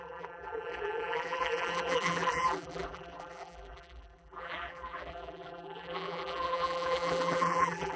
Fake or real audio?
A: fake